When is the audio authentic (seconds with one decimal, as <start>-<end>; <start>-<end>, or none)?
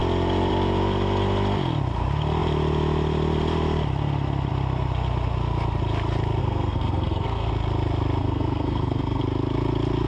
0.0-6.4; 7.5-8.2; 9.2-10.1